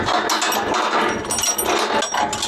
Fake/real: real